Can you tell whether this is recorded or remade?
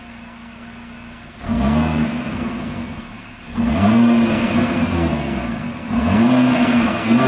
remade